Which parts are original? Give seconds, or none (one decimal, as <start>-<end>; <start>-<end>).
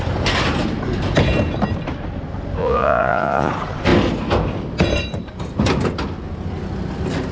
0.0-2.6; 3.5-7.3